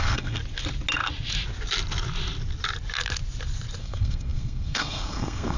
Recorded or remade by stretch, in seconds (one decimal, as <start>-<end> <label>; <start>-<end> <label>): 0.0-0.4 remade; 0.4-3.8 recorded; 3.8-5.6 remade